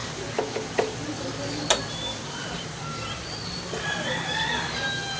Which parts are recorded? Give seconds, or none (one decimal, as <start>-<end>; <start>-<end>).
0.0-5.2